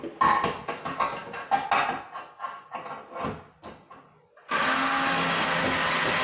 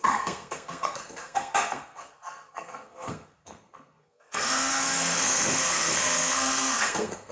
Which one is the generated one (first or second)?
second